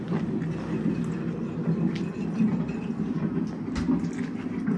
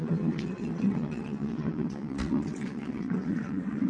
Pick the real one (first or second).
first